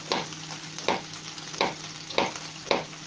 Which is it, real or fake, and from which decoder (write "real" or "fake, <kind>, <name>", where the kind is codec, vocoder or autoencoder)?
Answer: real